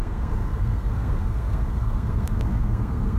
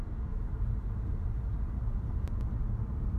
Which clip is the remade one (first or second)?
first